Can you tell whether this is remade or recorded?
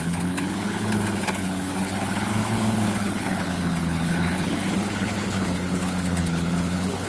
remade